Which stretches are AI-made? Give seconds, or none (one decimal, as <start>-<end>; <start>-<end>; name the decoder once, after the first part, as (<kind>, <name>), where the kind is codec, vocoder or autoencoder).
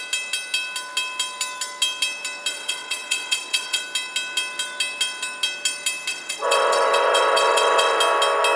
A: 2.5-3.8 (vocoder, WaveNeXt); 6.1-8.0